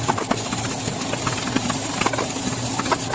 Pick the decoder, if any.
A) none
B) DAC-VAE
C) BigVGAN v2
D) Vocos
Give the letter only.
A